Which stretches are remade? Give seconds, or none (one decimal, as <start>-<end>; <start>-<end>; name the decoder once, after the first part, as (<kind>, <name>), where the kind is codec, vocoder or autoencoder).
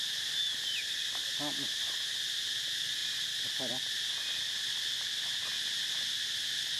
none